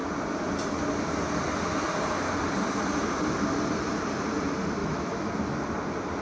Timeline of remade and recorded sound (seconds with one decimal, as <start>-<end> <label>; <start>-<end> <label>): 0.0-4.8 recorded; 4.8-5.3 remade; 5.3-6.2 recorded